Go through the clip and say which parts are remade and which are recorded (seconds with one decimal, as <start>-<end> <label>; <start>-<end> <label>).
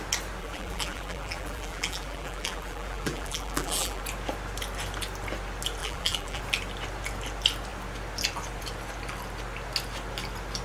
0.0-0.4 recorded; 0.4-4.0 remade; 4.0-5.8 recorded; 5.8-6.4 remade; 6.4-10.6 recorded